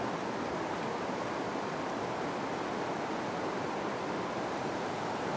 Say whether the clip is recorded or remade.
recorded